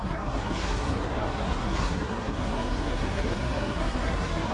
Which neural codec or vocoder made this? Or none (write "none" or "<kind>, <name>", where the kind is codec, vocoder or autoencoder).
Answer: codec, SNAC